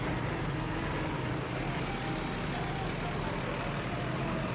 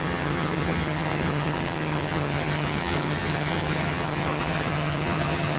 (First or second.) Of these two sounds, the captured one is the first